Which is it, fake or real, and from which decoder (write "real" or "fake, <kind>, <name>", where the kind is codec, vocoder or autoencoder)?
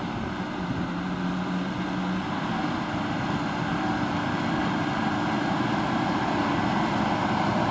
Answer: real